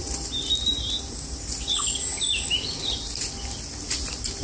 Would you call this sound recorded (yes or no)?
yes